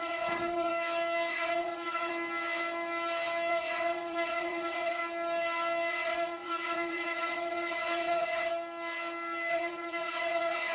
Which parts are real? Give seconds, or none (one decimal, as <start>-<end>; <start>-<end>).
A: 0.7-1.3; 2.1-3.5; 5.0-5.9; 8.5-9.5